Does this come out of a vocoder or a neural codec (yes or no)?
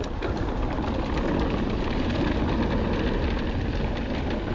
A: no